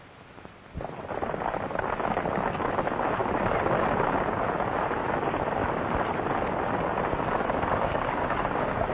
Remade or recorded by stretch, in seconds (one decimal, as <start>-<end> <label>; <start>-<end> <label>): 0.0-7.7 recorded; 7.7-8.9 remade